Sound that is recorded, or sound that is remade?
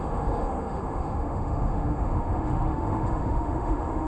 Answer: remade